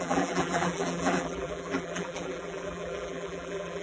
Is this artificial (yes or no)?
yes